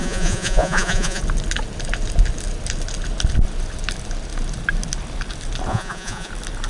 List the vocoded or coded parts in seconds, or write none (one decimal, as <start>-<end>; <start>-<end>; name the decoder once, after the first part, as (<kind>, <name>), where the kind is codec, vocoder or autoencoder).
0.0-1.2 (vocoder, Vocos); 5.7-6.3